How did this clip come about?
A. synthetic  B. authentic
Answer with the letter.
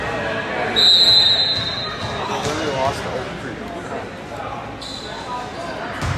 B